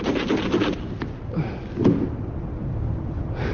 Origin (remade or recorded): recorded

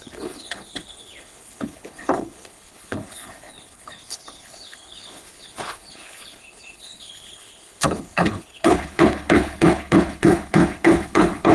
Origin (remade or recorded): remade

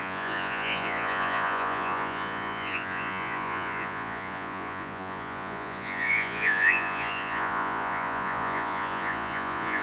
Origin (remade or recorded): remade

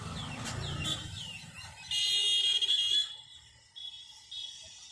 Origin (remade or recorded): recorded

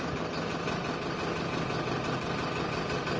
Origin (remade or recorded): recorded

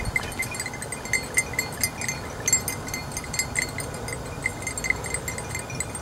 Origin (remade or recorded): recorded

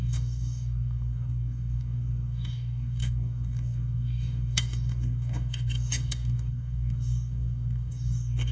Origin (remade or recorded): remade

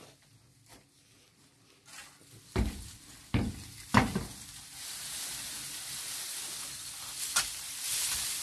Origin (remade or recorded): recorded